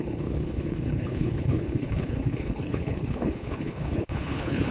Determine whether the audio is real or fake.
fake